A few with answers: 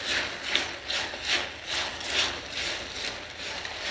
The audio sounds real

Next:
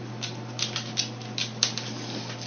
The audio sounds real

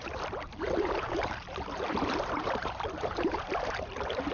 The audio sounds fake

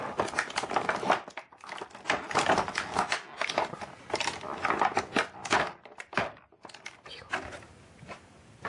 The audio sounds real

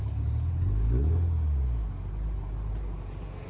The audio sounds real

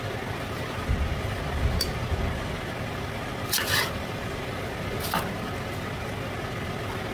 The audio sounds real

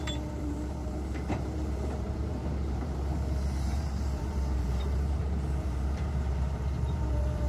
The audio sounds fake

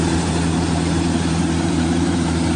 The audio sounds fake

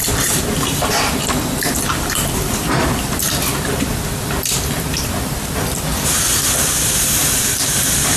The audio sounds fake